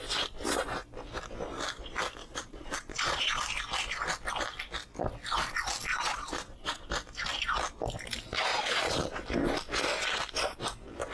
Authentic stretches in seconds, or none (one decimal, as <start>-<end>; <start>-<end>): 0.0-2.2; 3.4-5.9; 6.9-8.5; 9.2-11.1